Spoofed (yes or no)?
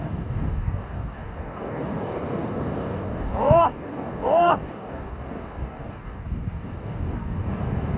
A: yes